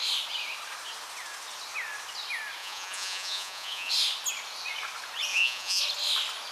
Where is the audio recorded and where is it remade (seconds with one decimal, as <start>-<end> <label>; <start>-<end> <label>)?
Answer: 0.0-2.6 recorded; 2.6-3.9 remade; 3.9-5.3 recorded; 5.3-5.8 remade; 5.8-6.5 recorded